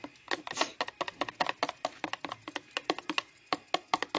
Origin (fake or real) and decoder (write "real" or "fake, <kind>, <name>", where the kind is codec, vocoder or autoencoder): real